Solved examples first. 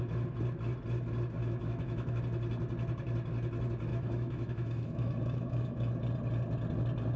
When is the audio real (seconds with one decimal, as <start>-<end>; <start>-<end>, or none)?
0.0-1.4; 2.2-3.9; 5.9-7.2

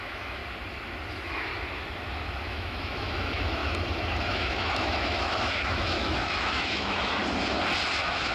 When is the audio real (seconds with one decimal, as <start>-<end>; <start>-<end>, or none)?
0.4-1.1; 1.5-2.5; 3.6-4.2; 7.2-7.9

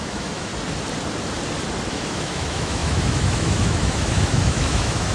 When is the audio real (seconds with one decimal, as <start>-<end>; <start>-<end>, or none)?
0.5-1.9

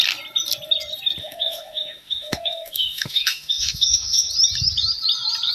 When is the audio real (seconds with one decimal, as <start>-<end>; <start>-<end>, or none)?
0.0-1.2; 4.3-5.5